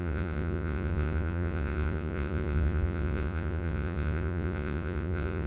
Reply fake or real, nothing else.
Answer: fake